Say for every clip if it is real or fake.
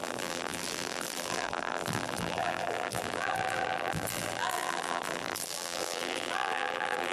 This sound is fake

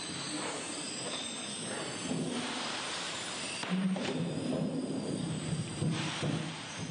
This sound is fake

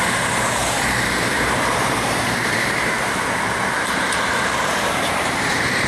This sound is fake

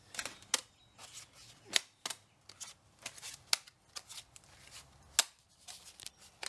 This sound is real